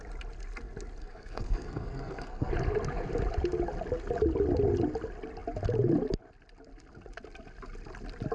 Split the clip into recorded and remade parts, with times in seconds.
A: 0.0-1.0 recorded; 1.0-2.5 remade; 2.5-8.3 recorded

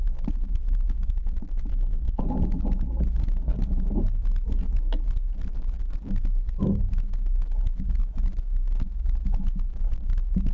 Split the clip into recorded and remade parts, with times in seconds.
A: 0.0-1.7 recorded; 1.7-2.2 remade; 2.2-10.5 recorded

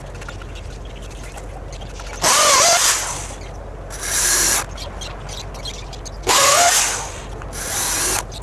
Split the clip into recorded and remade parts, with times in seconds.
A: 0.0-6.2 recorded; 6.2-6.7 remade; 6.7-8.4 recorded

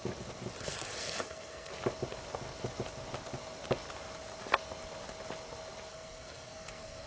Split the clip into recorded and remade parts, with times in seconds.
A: 0.0-0.6 recorded; 0.6-1.7 remade; 1.7-5.9 recorded; 5.9-7.1 remade

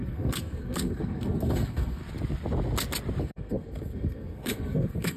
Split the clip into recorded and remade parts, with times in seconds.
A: 0.0-2.0 remade; 2.0-3.2 recorded; 3.2-5.2 remade

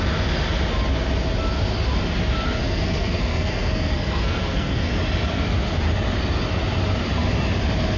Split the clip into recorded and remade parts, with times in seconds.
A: 0.0-2.6 recorded; 2.6-4.9 remade; 4.9-8.0 recorded

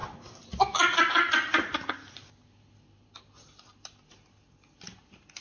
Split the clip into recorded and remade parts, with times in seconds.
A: 0.0-5.4 recorded